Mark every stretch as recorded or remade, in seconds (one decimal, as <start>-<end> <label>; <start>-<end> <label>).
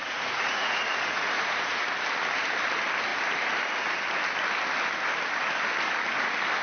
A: 0.0-1.8 remade; 1.8-6.6 recorded